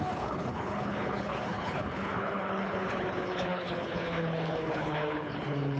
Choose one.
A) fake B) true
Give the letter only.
A